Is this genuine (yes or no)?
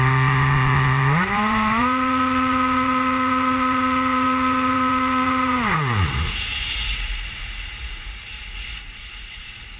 no